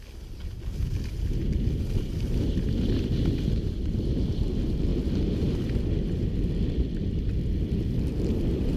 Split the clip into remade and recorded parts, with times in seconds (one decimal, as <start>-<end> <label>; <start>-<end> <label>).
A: 0.0-8.8 recorded